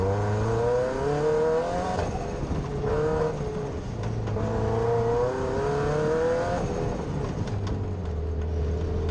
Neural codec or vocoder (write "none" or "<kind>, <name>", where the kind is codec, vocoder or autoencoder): none